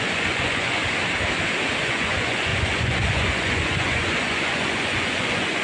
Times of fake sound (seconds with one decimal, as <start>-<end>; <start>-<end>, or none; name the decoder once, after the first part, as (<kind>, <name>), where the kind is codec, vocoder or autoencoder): 0.0-0.8 (vocoder, Vocos); 1.8-5.6

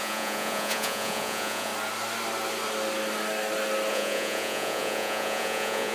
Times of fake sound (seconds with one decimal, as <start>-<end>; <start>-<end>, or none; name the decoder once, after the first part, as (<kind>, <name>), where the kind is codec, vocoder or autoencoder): 0.0-1.7 (vocoder, Vocos); 3.9-5.9

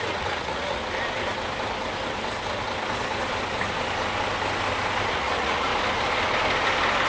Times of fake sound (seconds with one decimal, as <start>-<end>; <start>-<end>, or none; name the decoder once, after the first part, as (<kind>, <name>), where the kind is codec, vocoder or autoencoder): 0.0-0.8 (vocoder, Vocos); 5.1-5.7

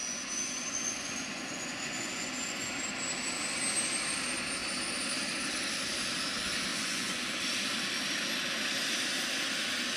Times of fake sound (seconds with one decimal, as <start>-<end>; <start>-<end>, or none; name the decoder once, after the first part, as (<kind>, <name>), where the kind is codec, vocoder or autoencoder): 0.0-2.8 (vocoder, Vocos); 6.7-7.4

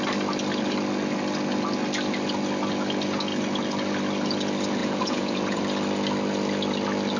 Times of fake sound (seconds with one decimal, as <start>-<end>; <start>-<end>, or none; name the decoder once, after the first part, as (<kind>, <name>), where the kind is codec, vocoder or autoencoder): 4.8-5.6 (vocoder, Vocos)